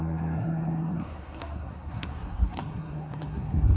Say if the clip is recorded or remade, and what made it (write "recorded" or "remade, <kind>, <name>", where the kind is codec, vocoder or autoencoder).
remade, codec, SNAC